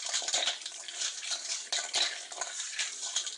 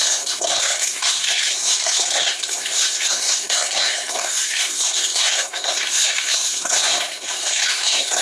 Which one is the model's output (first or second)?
second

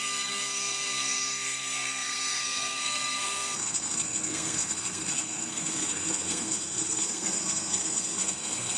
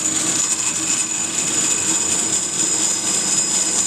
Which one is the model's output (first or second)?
first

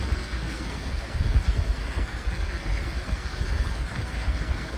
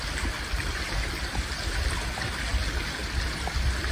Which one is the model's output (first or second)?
first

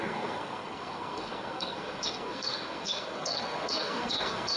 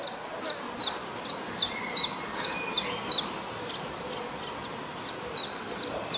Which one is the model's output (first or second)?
first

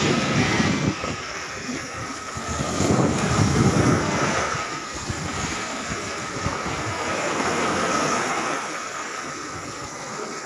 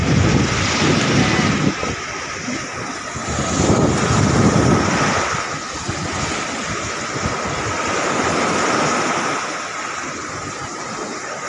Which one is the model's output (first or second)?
first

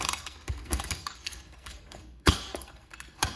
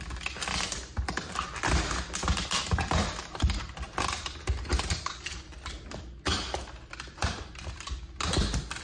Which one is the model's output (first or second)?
first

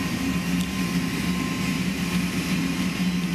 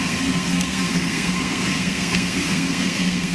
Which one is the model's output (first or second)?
second